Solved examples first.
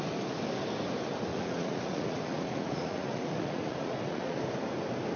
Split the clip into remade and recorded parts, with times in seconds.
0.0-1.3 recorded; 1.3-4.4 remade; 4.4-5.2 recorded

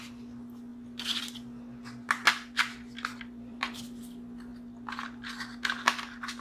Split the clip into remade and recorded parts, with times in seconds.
0.0-0.7 recorded; 0.7-1.2 remade; 1.2-3.1 recorded; 3.1-4.0 remade; 4.0-6.4 recorded

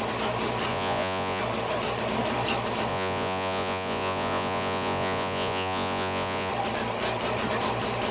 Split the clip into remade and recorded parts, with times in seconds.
0.0-0.7 recorded; 0.7-1.4 remade; 1.4-2.9 recorded; 2.9-6.5 remade; 6.5-8.1 recorded